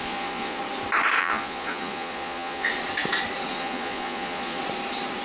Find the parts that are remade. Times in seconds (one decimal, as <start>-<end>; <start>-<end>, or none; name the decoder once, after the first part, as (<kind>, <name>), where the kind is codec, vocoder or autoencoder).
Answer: 0.0-0.6 (vocoder, Vocos); 1.2-2.7; 3.5-4.6